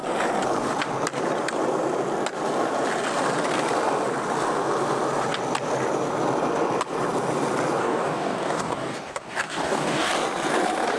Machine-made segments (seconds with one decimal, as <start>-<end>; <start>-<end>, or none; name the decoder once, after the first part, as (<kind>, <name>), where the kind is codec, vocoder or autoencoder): 7.8-10.1 (codec, DAC)

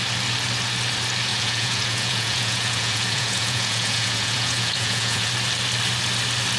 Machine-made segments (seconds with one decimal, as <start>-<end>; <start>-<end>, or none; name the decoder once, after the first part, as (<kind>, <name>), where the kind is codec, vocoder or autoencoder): 1.3-5.3 (vocoder, Vocos)

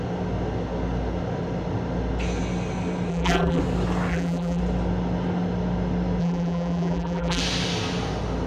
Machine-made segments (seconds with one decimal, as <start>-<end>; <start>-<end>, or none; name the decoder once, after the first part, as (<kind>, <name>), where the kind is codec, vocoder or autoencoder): 3.1-3.6 (vocoder, BigVGAN v2); 4.1-4.6; 6.2-7.4

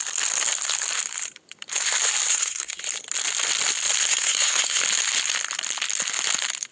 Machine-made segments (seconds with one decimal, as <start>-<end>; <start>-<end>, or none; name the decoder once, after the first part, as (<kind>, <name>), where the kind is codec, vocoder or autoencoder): 2.3-2.8 (codec, SNAC); 4.1-4.8

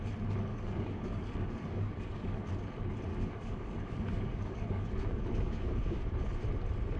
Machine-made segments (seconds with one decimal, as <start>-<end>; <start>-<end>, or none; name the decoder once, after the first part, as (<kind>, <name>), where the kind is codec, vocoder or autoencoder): 0.5-2.5 (codec, DAC); 3.1-6.0